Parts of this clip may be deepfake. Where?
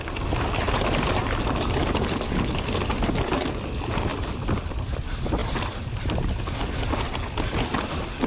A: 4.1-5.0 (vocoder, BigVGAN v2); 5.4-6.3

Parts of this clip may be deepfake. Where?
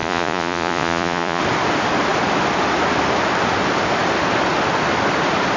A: 0.0-1.4 (vocoder, Vocos)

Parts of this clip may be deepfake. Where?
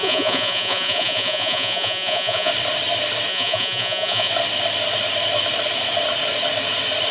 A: 0.0-2.5 (vocoder, Vocos); 3.3-4.3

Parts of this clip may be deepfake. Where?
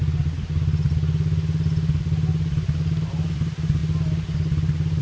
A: none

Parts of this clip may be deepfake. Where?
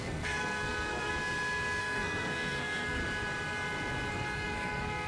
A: 0.0-1.1 (codec, SNAC); 1.8-3.0; 4.1-5.1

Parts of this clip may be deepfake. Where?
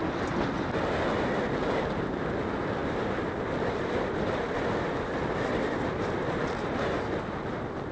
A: none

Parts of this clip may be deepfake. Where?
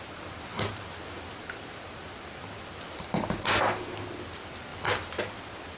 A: 0.5-4.0 (vocoder, BigVGAN v2); 4.7-5.2